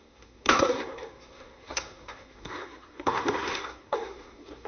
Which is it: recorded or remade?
remade